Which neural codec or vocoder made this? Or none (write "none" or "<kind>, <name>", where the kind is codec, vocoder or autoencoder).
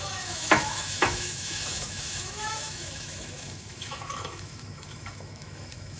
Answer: autoencoder, DAC-VAE